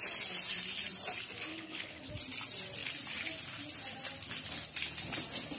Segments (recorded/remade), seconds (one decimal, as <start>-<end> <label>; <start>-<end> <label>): 0.0-1.5 recorded; 1.5-2.1 remade; 2.1-5.6 recorded